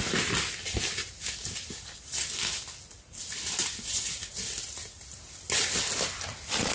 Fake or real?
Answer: real